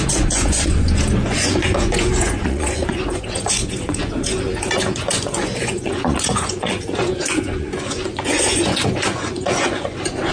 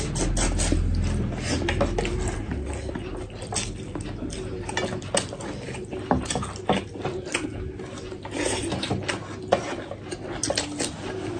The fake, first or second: first